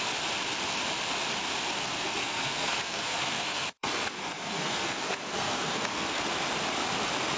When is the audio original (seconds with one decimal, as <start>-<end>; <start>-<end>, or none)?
0.0-1.8; 6.2-7.4